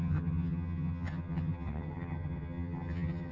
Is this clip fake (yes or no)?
yes